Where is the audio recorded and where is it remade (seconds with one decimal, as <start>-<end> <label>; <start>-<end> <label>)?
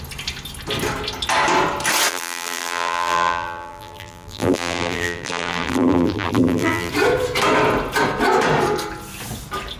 0.0-2.1 recorded; 2.1-6.9 remade; 6.9-9.8 recorded